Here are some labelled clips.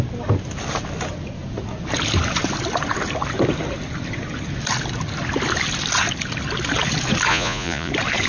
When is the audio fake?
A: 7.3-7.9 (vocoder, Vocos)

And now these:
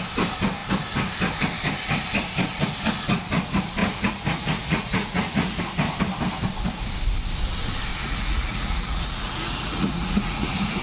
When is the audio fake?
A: 3.8-5.6 (vocoder, Vocos); 7.9-10.8

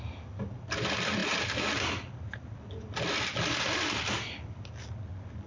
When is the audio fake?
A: none

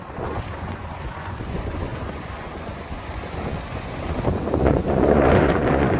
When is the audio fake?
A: 0.0-6.0 (vocoder, Vocos)

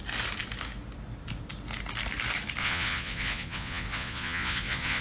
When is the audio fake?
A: 2.6-5.0 (vocoder, Vocos)

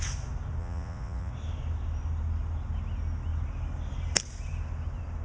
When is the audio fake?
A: 0.6-1.3 (vocoder, Vocos)

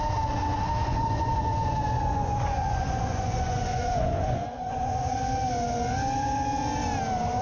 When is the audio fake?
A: 0.8-5.2 (vocoder, Vocos)